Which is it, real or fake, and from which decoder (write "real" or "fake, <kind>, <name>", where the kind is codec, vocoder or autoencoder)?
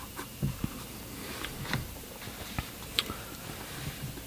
fake, vocoder, BigVGAN v2